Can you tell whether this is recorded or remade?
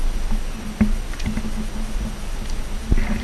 recorded